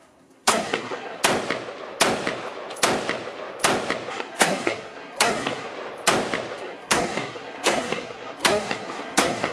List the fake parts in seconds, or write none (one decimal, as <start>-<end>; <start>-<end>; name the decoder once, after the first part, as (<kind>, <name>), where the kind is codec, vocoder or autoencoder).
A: 0.0-1.2 (codec, SNAC); 4.1-5.7; 6.6-9.5